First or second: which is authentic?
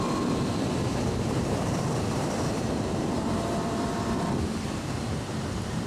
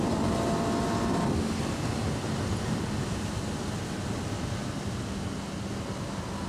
second